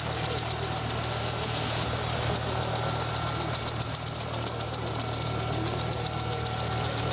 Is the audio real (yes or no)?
yes